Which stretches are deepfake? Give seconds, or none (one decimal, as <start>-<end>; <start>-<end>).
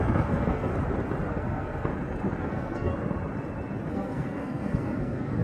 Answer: 0.0-0.7; 1.3-1.9; 2.4-2.9; 3.9-5.4